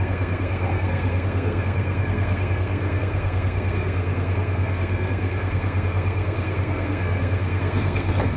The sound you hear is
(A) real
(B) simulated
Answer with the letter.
B